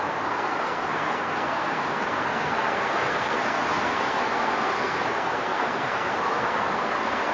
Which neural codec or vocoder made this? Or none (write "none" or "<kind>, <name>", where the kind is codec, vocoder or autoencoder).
codec, SNAC